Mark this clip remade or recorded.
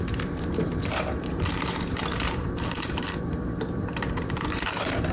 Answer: remade